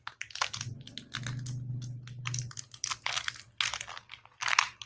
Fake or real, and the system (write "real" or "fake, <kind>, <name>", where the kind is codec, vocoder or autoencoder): real